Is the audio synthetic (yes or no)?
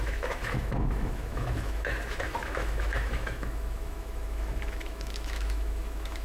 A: yes